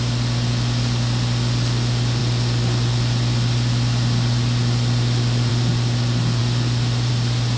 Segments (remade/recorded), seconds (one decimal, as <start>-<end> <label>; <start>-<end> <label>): 0.0-7.6 recorded